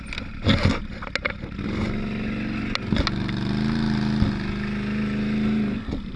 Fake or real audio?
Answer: real